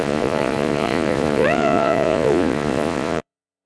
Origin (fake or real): fake